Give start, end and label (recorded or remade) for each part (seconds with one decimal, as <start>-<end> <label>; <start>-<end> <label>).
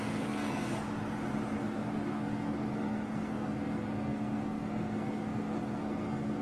0.0-0.7 remade; 0.7-1.6 recorded; 1.6-6.4 remade